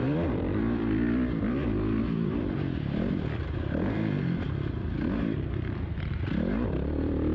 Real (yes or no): no